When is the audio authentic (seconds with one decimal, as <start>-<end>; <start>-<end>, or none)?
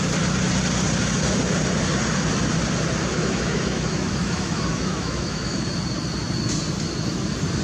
0.0-3.1; 5.7-7.6